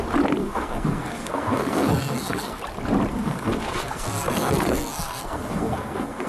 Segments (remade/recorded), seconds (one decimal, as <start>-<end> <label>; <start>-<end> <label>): 0.0-0.4 recorded; 0.4-2.6 remade; 2.6-3.1 recorded; 3.1-6.3 remade